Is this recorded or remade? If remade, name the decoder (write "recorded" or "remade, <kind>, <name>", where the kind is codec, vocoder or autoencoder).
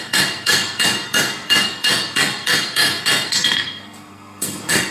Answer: remade, codec, SNAC